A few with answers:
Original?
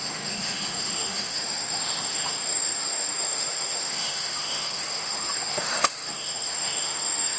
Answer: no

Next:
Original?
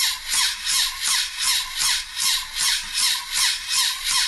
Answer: yes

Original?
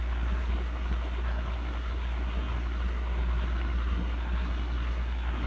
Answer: no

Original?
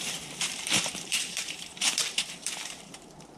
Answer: no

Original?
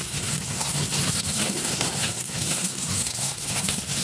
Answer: no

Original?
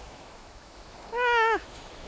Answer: no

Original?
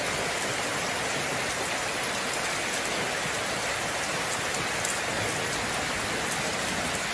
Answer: yes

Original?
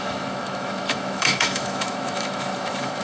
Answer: no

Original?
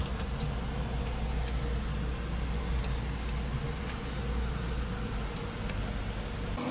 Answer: yes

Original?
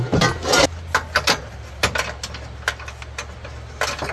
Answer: yes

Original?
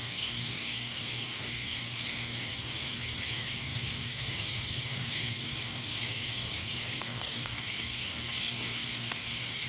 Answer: no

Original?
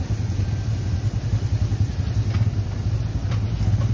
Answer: yes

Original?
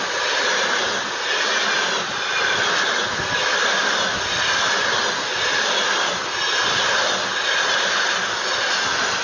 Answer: yes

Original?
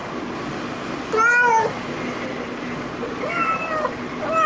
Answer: yes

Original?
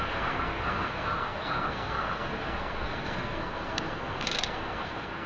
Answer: no